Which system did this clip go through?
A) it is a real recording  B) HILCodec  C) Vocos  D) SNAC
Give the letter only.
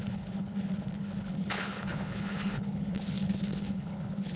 B